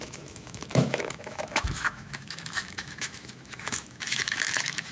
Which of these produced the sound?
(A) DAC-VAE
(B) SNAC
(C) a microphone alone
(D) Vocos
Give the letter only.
A